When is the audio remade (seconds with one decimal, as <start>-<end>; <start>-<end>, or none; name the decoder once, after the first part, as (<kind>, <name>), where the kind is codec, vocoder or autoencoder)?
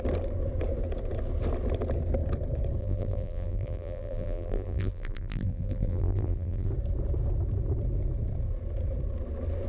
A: 2.8-6.7 (vocoder, BigVGAN v2)